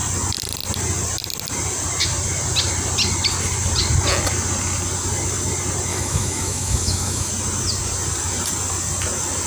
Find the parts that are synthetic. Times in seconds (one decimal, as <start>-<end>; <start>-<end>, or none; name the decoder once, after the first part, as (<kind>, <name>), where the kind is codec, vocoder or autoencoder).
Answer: 5.9-7.3 (autoencoder, DAC-VAE)